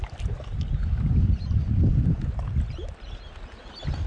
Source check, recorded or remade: recorded